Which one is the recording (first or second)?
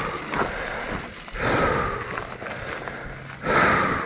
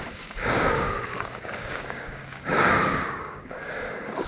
first